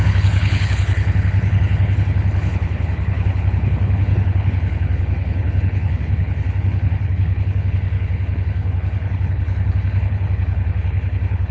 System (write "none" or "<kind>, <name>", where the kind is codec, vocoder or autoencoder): codec, HILCodec